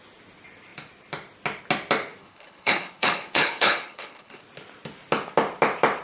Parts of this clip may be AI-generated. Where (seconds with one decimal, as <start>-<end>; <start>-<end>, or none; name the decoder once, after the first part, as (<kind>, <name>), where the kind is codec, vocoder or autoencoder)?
2.2-4.4 (codec, HILCodec)